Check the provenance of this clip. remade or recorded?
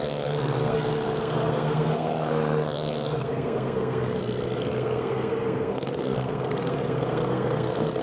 remade